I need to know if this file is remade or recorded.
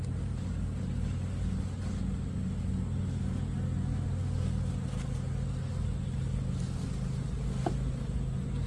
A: recorded